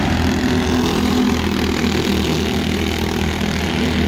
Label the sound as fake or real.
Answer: real